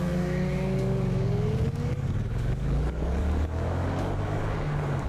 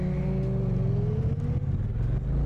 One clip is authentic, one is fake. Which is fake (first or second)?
first